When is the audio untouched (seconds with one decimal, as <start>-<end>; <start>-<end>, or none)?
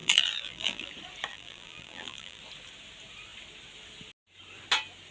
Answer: 0.9-1.3; 2.4-5.1